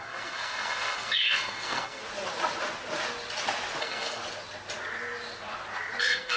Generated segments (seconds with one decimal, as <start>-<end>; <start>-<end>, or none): 0.0-2.0; 3.8-4.2; 6.0-6.4